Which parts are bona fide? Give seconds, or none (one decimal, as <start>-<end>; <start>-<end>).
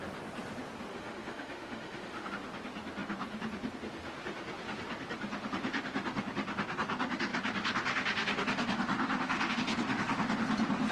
0.0-0.9; 2.3-10.9